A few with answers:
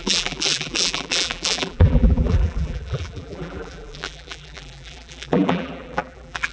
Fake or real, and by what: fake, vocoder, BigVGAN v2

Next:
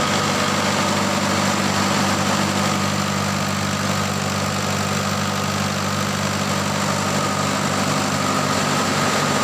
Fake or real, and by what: real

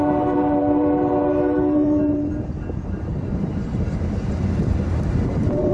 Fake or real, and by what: fake, vocoder, BigVGAN v2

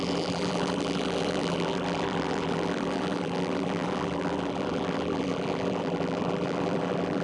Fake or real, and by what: fake, vocoder, BigVGAN v2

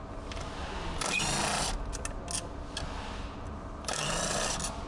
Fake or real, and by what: real